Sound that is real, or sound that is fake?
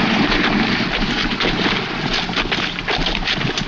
real